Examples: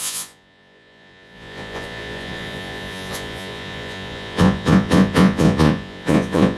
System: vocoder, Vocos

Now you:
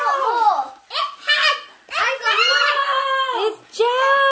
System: none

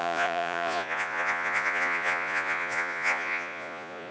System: vocoder, Vocos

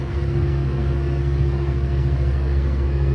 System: codec, SNAC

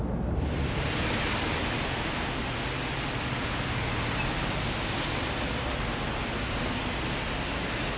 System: none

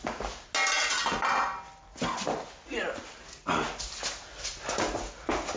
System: none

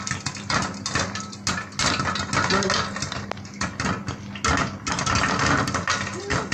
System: none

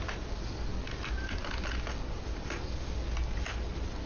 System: none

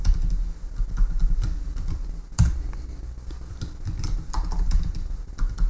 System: none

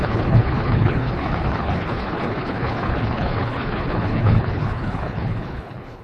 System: codec, HILCodec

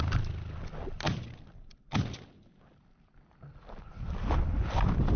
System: none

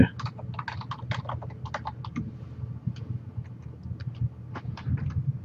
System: none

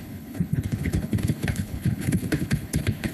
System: codec, HILCodec